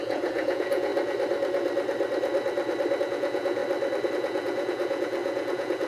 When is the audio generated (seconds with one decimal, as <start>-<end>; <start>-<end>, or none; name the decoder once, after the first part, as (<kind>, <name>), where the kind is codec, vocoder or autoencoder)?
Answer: 0.0-0.9 (vocoder, Vocos); 3.0-3.6; 4.1-5.9